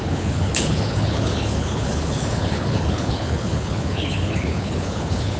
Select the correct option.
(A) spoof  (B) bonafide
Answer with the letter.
A